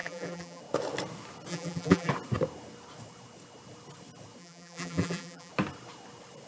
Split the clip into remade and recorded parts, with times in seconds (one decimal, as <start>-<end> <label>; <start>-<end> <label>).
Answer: 0.0-0.6 remade; 0.6-1.5 recorded; 1.5-2.1 remade; 2.1-4.4 recorded; 4.4-5.5 remade; 5.5-6.5 recorded